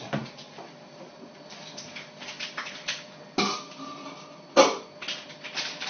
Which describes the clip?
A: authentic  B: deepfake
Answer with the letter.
A